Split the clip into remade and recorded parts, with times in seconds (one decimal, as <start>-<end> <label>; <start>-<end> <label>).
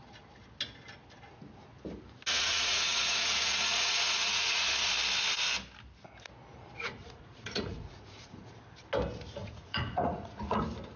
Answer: 0.0-2.3 recorded; 2.3-4.9 remade; 4.9-7.0 recorded; 7.0-8.6 remade; 8.6-9.4 recorded; 9.4-10.6 remade; 10.6-11.0 recorded